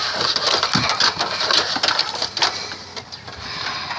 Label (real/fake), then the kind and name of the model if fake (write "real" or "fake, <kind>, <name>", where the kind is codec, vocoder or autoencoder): real